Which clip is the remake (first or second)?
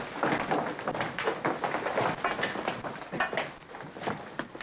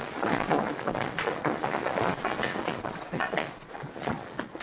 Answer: second